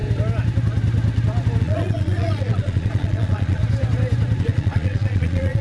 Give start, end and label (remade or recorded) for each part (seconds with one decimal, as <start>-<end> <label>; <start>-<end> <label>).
0.0-1.6 recorded; 1.6-3.6 remade; 3.6-4.4 recorded; 4.4-5.6 remade